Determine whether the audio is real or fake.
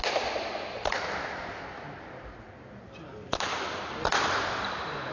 real